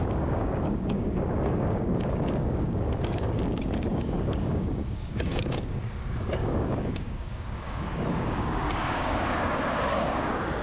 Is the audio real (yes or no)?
no